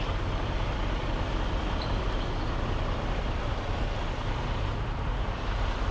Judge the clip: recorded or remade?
remade